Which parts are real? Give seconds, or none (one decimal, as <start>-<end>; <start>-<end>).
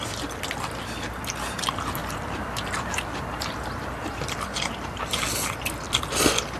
0.0-2.0; 5.2-6.6